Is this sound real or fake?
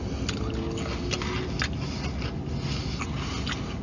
real